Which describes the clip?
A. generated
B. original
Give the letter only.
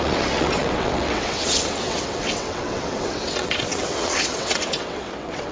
A